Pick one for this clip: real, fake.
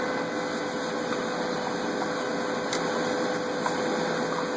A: real